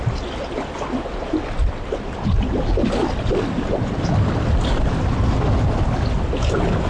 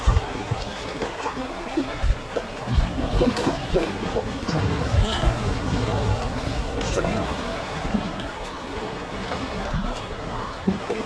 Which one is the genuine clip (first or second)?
first